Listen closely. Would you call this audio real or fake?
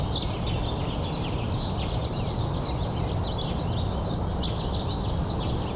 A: real